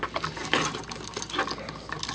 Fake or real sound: real